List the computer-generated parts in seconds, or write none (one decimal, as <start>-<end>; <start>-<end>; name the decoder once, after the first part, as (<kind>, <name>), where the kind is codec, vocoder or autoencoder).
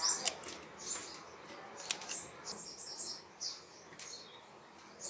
none